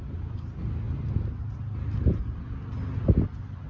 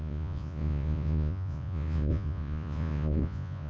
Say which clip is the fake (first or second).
second